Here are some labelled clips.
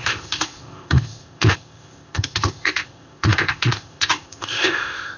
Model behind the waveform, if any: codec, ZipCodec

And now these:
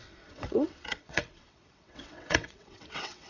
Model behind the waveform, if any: vocoder, WaveNeXt